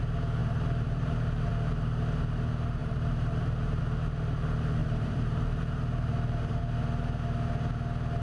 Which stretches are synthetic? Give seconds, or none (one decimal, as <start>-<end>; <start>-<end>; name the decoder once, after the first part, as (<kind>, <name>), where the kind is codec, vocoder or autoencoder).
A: 0.4-1.5 (vocoder, BigVGAN v2); 2.8-3.8; 4.8-6.6